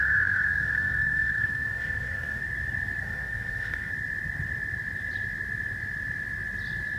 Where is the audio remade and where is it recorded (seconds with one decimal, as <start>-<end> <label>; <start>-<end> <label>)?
0.0-2.4 remade; 2.4-3.0 recorded; 3.0-3.9 remade; 3.9-7.0 recorded